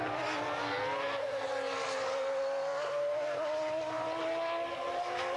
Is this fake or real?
real